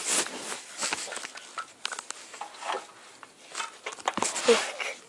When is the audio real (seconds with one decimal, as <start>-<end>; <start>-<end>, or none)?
0.0-5.1